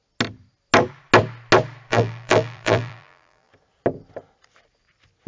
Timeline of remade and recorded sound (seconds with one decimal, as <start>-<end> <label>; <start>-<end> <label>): 0.0-1.9 recorded; 1.9-3.5 remade; 3.5-5.3 recorded